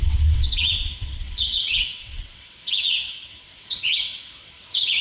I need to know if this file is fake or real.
fake